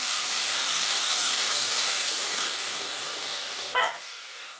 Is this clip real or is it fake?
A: fake